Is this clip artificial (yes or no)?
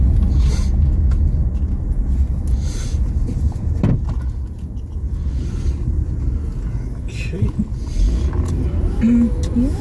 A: no